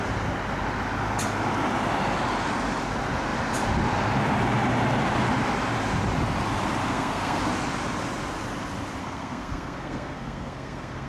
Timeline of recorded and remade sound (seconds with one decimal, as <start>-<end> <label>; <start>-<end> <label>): 0.0-6.8 recorded; 6.8-7.4 remade; 7.4-9.0 recorded; 9.0-11.1 remade